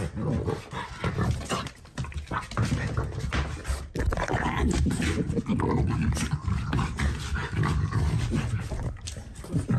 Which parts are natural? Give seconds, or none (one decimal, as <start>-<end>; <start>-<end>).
0.0-3.6; 5.4-9.8